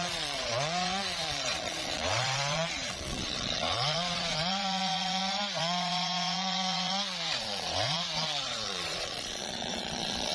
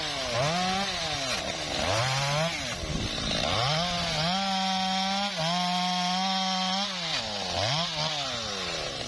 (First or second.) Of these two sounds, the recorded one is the second